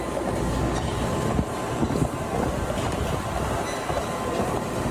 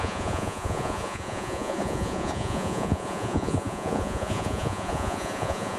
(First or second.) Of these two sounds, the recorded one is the first